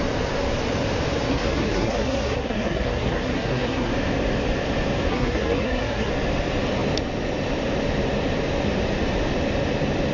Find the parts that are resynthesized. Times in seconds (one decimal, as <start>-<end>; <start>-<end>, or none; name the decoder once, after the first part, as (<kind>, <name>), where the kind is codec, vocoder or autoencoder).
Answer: 1.3-3.9 (codec, SNAC); 5.1-6.1